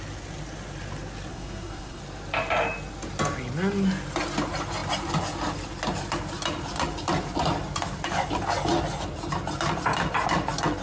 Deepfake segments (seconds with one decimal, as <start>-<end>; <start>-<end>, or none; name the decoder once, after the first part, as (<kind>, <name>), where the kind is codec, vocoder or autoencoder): 1.3-2.0 (codec, SNAC)